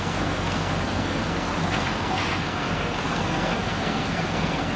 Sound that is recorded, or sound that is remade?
remade